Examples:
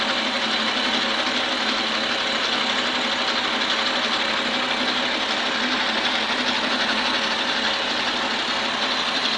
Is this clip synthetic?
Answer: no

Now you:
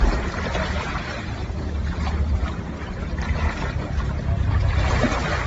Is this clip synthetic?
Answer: no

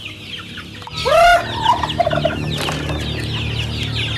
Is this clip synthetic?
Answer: no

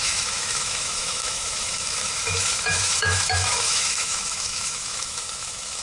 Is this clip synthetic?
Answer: yes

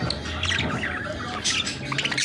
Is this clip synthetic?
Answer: no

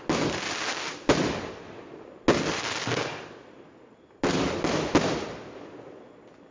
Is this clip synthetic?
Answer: no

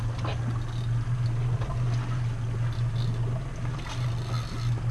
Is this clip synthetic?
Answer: no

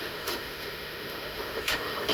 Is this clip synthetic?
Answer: yes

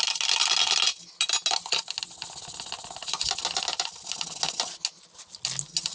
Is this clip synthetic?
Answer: no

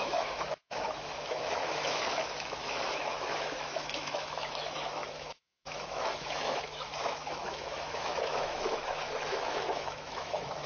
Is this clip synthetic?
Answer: yes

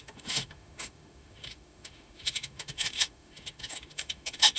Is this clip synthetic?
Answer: yes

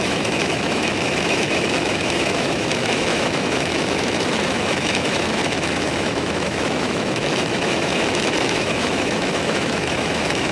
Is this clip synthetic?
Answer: yes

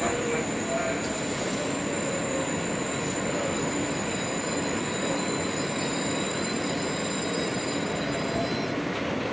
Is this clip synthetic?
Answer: no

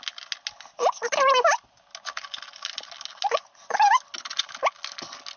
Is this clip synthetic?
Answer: no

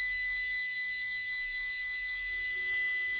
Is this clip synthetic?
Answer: yes